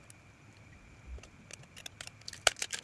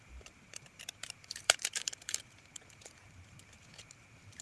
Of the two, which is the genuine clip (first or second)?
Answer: first